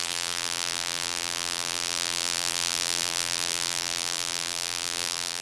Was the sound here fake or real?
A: fake